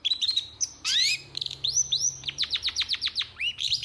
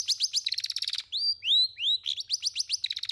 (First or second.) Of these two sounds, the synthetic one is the first